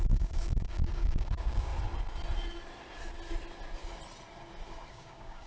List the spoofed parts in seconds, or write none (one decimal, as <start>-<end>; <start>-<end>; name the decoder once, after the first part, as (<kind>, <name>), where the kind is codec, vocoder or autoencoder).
0.0-1.7 (codec, DAC); 4.9-5.5